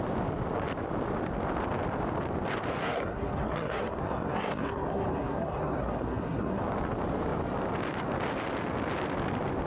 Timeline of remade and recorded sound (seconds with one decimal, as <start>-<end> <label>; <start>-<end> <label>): 0.0-2.7 recorded; 2.7-6.6 remade; 6.6-9.7 recorded